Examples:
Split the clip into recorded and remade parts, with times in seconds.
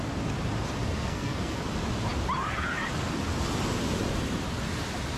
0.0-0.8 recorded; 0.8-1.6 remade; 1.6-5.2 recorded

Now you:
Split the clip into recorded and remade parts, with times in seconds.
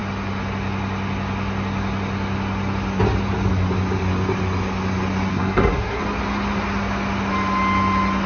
0.0-5.3 recorded; 5.3-6.0 remade; 6.0-8.3 recorded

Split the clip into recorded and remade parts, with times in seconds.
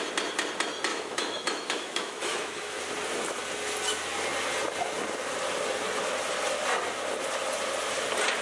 0.0-0.9 recorded; 0.9-2.8 remade; 2.8-8.4 recorded